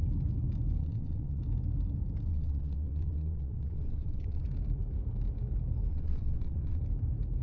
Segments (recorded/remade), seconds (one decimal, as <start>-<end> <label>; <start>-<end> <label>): 0.0-0.8 recorded; 0.8-1.4 remade; 1.4-2.3 recorded; 2.3-4.4 remade; 4.4-5.9 recorded; 5.9-6.8 remade; 6.8-7.4 recorded